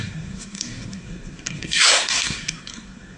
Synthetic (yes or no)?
yes